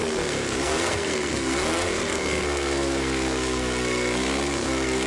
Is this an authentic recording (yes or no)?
no